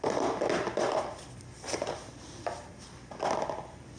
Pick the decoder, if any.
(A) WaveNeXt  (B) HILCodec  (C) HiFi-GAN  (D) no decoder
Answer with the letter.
D